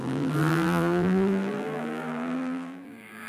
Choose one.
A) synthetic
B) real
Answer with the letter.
A